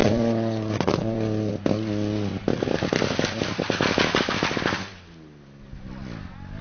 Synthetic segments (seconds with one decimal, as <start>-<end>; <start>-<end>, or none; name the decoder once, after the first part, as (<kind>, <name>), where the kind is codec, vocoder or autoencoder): 0.0-1.5 (vocoder, Vocos)